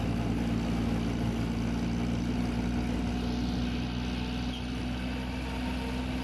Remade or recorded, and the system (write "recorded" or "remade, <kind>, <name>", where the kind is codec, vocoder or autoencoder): recorded